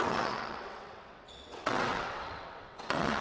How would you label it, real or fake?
fake